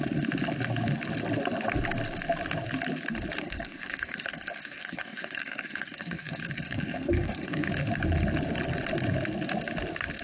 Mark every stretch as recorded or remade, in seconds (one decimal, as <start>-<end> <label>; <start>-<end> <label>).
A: 0.0-3.4 recorded; 3.4-7.7 remade; 7.7-10.2 recorded